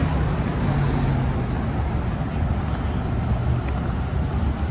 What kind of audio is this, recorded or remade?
recorded